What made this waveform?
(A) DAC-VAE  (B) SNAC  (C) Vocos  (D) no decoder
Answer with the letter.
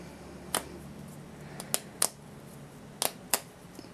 D